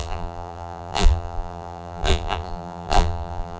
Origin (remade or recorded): remade